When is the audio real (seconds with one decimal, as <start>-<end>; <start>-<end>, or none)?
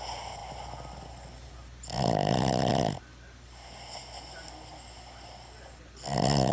0.0-6.5